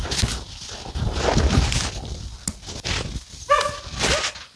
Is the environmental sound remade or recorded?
recorded